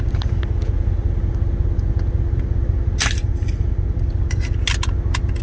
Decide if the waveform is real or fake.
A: real